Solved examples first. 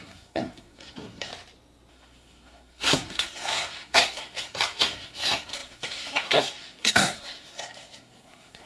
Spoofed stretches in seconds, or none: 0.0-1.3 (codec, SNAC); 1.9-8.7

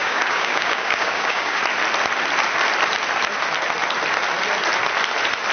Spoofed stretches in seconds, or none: 0.0-1.6 (codec, DAC)

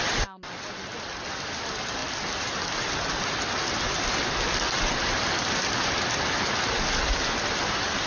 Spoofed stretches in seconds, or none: none

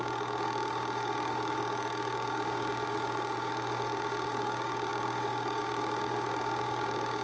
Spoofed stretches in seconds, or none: 0.0-7.2 (codec, DAC)

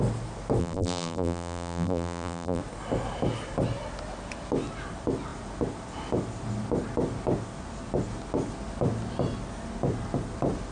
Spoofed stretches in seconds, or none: 0.6-2.6 (vocoder, BigVGAN v2)

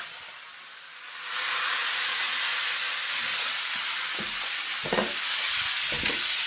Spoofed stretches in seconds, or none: none